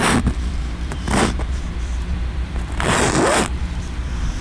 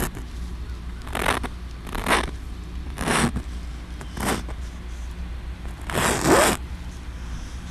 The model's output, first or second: first